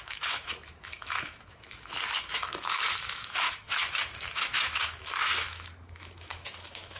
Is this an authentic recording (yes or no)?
no